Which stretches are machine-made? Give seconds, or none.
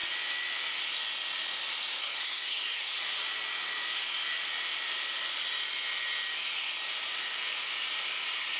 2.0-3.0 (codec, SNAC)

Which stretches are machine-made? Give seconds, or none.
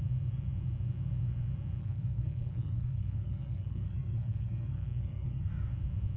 1.8-5.5 (codec, SNAC)